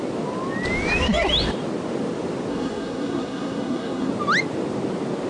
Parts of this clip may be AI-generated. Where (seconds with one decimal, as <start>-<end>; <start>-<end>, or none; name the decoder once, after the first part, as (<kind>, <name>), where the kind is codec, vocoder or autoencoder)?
2.5-4.1 (codec, SNAC)